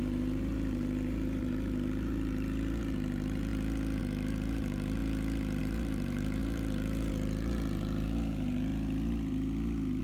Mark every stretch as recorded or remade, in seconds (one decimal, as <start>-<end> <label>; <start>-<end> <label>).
0.0-3.5 remade; 3.5-4.0 recorded; 4.0-5.0 remade; 5.0-5.6 recorded; 5.6-8.7 remade; 8.7-10.0 recorded